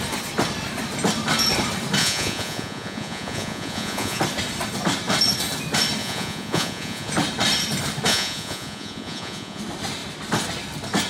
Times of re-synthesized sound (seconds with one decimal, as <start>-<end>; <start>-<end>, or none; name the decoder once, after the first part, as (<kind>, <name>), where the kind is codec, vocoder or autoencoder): 2.0-4.2 (vocoder, Vocos); 6.0-7.1; 8.1-9.6